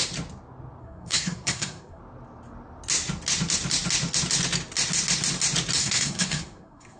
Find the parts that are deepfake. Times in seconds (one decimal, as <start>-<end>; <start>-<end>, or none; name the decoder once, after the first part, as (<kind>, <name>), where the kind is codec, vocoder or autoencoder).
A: 0.8-2.0 (codec, SNAC); 5.8-7.0